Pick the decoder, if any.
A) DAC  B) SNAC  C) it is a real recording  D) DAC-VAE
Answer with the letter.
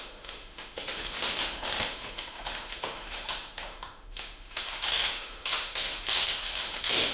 D